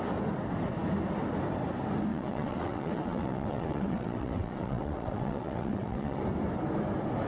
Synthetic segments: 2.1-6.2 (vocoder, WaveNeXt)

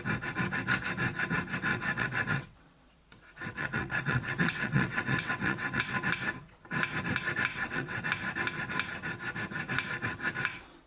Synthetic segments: 1.7-5.8 (vocoder, WaveNeXt); 7.5-8.1

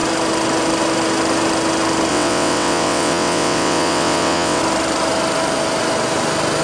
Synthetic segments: 2.1-4.6 (vocoder, WaveNeXt)

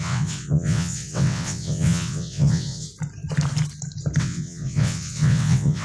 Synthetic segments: 0.0-2.9 (vocoder, WaveNeXt); 4.2-5.8

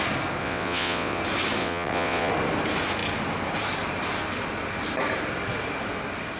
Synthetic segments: 0.4-1.2 (vocoder, WaveNeXt); 1.6-2.3

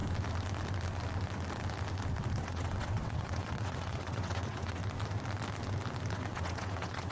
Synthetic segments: 2.4-4.8 (vocoder, WaveNeXt); 6.1-7.1

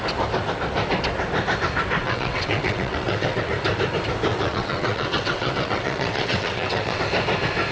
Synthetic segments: 2.0-3.5 (vocoder, WaveNeXt); 4.3-7.0

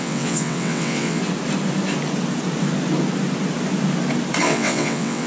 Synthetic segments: 0.0-1.2 (vocoder, WaveNeXt); 4.4-5.3